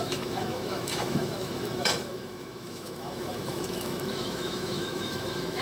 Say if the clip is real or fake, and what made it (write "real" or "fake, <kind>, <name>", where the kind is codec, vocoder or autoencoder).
fake, autoencoder, DAC-VAE